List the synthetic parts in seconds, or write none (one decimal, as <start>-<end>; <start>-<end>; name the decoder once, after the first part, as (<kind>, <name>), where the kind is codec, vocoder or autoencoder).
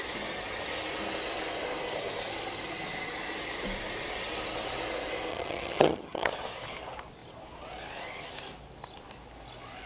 5.3-6.3 (vocoder, HiFi-GAN)